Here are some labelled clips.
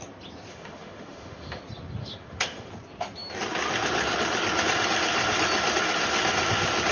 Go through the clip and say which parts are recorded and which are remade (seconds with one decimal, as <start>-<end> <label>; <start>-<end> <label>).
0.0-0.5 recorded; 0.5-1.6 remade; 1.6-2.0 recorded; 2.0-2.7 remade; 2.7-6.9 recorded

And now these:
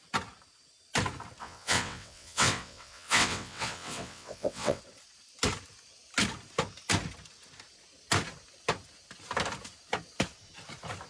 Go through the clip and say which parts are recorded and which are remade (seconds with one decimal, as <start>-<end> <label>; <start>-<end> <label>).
0.0-1.4 recorded; 1.4-4.8 remade; 4.8-11.1 recorded

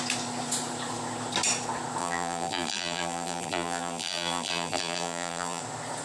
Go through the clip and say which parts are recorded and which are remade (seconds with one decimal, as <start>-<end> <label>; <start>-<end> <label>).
0.0-2.0 recorded; 2.0-5.6 remade; 5.6-6.0 recorded

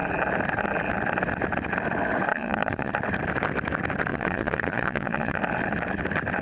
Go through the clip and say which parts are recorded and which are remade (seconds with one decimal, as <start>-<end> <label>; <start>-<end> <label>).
0.0-2.3 recorded; 2.3-2.9 remade; 2.9-4.1 recorded; 4.1-5.4 remade; 5.4-6.4 recorded

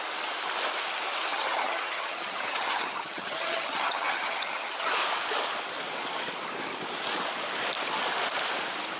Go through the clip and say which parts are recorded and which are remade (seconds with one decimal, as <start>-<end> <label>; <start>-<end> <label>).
0.0-1.3 recorded; 1.3-4.9 remade; 4.9-9.0 recorded